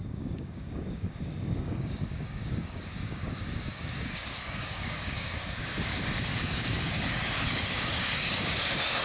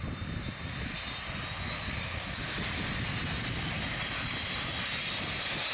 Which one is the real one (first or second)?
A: second